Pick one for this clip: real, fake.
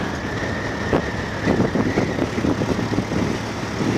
real